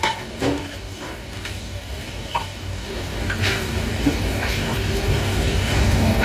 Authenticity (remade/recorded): remade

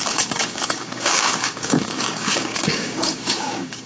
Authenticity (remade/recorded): remade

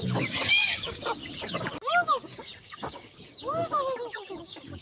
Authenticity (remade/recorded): remade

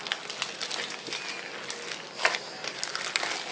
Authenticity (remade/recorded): recorded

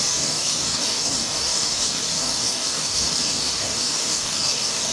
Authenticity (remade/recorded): remade